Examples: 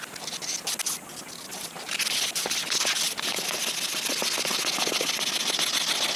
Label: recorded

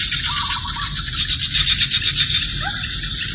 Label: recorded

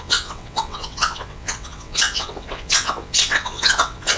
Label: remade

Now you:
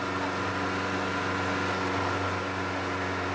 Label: recorded